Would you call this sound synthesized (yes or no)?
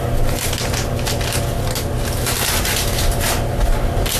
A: no